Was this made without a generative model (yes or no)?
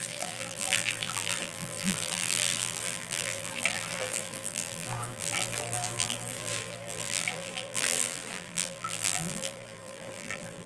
no